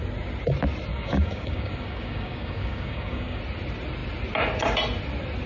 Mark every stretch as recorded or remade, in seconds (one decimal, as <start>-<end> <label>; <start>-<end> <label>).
0.0-0.9 recorded; 0.9-3.4 remade; 3.4-5.5 recorded